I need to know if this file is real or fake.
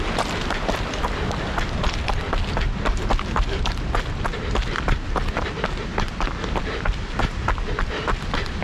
real